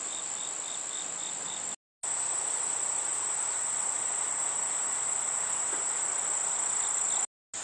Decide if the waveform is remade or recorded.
recorded